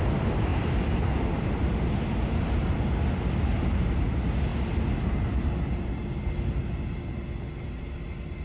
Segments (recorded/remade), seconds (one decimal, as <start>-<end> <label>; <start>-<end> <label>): 0.0-8.4 recorded